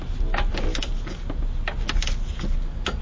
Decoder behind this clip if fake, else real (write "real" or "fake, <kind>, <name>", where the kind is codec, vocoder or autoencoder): real